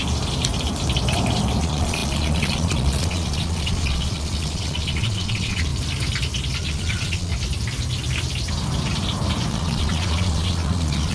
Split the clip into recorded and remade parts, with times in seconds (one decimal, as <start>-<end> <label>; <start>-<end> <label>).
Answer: 0.0-1.6 recorded; 1.6-5.7 remade; 5.7-6.6 recorded; 6.6-7.3 remade; 7.3-9.5 recorded; 9.5-11.1 remade